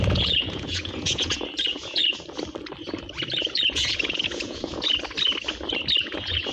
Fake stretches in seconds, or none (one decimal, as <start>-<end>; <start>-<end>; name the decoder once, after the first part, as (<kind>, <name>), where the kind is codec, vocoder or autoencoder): 0.0-2.0 (vocoder, Vocos); 3.4-4.9; 6.0-6.5

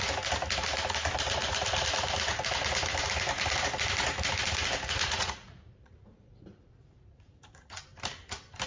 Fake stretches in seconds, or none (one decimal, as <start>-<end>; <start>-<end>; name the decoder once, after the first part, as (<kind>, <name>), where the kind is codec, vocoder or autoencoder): 5.0-7.8 (vocoder, Vocos)

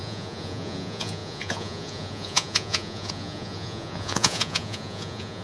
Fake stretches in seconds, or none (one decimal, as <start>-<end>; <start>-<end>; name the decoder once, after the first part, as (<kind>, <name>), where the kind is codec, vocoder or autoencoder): 0.0-5.4 (vocoder, Vocos)